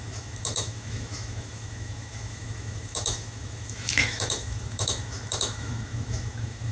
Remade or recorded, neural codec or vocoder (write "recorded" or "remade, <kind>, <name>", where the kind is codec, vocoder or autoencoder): remade, autoencoder, DAC-VAE